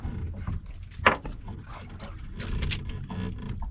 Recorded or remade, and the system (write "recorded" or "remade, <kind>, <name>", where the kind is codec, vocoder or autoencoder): recorded